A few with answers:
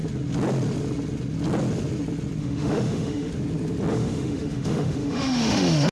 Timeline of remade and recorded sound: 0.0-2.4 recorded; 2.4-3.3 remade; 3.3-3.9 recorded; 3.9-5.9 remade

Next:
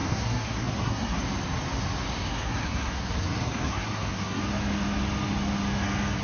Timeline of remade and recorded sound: 0.0-1.2 remade; 1.2-2.3 recorded; 2.3-4.4 remade; 4.4-6.2 recorded